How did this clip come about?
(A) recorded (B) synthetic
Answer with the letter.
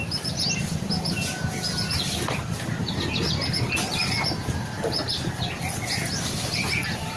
A